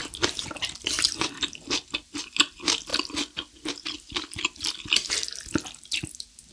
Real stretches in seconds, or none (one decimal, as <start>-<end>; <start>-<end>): 0.0-6.5